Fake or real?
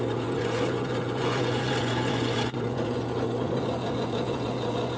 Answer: fake